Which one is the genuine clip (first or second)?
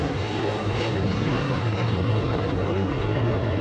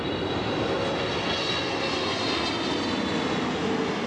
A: second